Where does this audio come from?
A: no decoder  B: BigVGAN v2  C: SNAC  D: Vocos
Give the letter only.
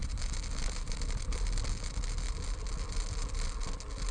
A